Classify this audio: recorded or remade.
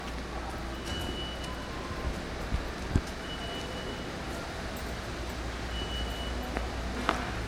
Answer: recorded